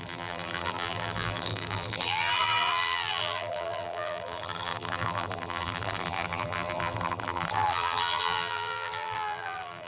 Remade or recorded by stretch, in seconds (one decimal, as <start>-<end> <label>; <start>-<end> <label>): 0.0-9.9 remade